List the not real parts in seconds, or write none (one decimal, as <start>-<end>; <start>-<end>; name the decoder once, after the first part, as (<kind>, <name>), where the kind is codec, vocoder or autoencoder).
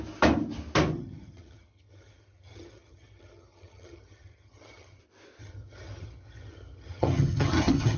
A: 0.9-5.0 (vocoder, HiFi-GAN); 5.4-8.0